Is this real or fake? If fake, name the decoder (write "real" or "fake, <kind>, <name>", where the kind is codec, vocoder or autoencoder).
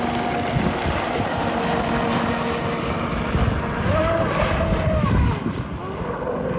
real